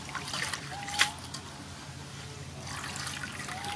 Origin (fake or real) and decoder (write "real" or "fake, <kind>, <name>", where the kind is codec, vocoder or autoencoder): real